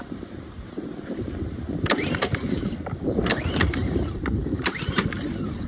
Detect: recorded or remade remade